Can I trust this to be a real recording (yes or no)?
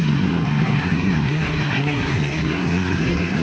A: no